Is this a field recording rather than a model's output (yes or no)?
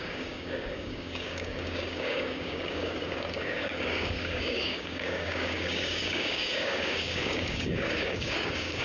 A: no